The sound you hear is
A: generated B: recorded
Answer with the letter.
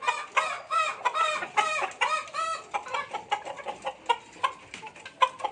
B